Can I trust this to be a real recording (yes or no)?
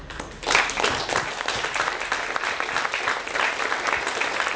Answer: yes